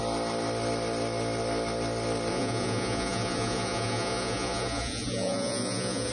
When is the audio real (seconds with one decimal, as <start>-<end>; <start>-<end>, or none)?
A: 0.0-2.3